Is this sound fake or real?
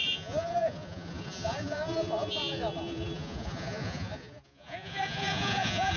fake